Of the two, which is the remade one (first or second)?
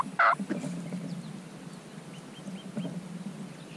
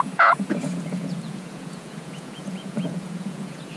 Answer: second